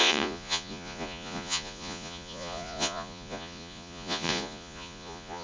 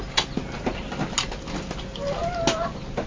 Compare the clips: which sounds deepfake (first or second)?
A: first